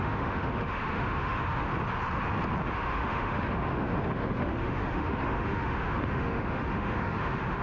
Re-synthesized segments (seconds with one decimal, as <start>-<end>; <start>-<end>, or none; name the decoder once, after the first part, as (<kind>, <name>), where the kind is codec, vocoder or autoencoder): 0.0-1.7 (autoencoder, DAC-VAE); 2.7-7.6